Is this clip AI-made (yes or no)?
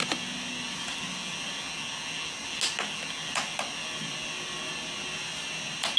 no